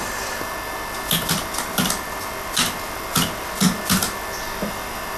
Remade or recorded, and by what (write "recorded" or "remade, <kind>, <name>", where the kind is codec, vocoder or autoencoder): recorded